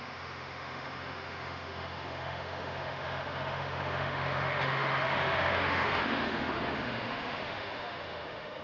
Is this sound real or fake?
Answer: fake